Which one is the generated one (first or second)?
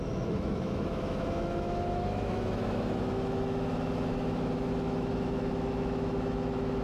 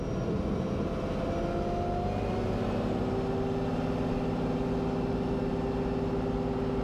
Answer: first